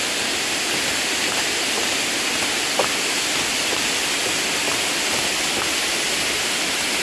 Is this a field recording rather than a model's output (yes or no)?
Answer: yes